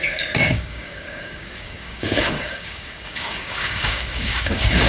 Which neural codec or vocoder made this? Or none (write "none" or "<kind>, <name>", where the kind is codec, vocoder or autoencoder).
codec, DAC